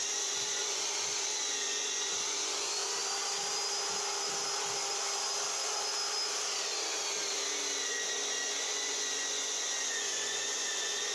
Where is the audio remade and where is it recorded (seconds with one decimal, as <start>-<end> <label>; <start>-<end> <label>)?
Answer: 0.0-2.8 remade; 2.8-7.8 recorded; 7.8-11.1 remade

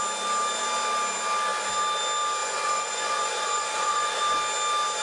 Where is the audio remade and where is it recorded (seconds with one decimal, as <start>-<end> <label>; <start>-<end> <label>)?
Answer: 0.0-2.4 recorded; 2.4-4.2 remade; 4.2-5.0 recorded

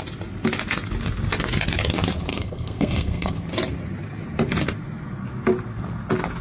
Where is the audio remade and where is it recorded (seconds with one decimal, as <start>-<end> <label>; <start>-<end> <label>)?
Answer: 0.0-2.3 recorded; 2.3-3.3 remade; 3.3-6.4 recorded

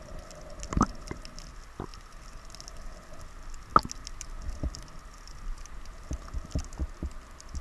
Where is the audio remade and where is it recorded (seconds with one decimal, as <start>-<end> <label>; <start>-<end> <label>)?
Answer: 0.0-7.6 recorded

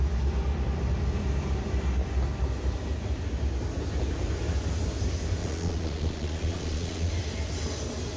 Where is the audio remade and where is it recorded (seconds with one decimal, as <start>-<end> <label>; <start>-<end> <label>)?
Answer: 0.0-5.4 recorded; 5.4-7.1 remade; 7.1-8.2 recorded

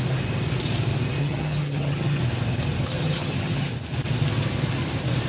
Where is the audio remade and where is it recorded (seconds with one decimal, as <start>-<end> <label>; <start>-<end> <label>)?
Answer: 0.0-1.2 recorded; 1.2-2.2 remade; 2.2-3.0 recorded; 3.0-3.7 remade; 3.7-5.3 recorded